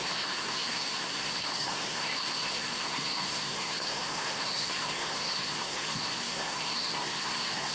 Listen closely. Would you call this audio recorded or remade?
remade